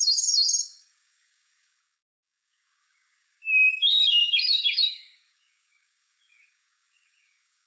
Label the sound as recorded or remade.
remade